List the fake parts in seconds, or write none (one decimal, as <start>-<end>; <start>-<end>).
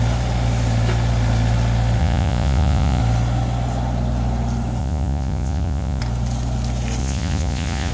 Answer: 2.0-3.0; 4.8-6.0; 7.0-7.9